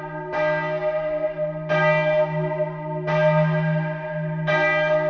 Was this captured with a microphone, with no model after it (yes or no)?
yes